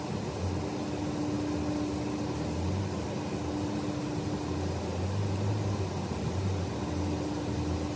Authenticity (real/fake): real